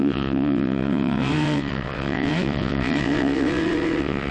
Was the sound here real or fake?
fake